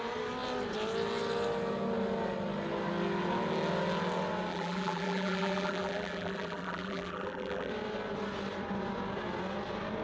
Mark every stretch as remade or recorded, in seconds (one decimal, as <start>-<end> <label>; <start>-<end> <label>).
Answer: 0.0-4.5 recorded; 4.5-7.7 remade; 7.7-10.0 recorded